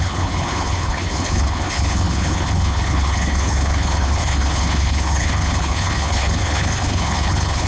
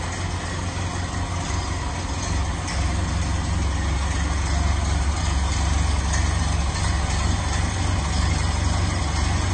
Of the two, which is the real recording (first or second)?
second